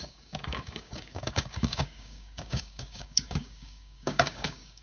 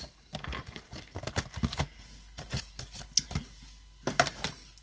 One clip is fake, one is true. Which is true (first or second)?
second